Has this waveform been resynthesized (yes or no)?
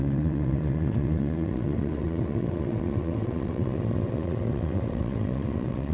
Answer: yes